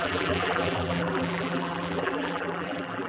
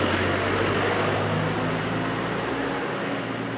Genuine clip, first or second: second